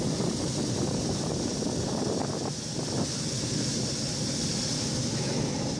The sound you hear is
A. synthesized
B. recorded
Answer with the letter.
B